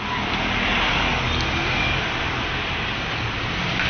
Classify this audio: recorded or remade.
recorded